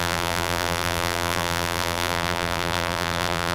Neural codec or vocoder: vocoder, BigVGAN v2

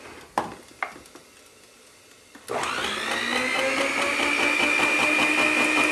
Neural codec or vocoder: none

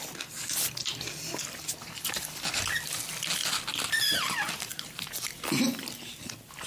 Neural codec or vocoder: none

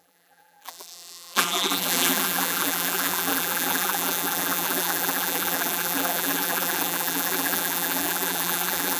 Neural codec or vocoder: vocoder, BigVGAN v2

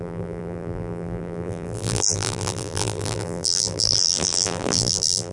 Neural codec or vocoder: vocoder, BigVGAN v2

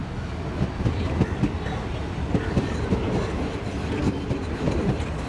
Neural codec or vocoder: none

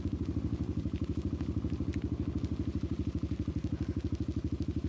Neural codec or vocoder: none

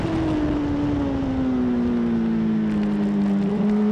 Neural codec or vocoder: none